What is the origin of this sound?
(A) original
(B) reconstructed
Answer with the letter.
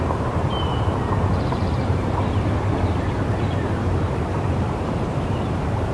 B